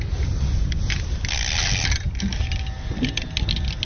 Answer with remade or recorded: recorded